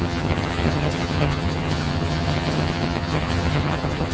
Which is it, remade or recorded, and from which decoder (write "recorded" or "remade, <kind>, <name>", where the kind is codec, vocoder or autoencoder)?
remade, vocoder, HiFi-GAN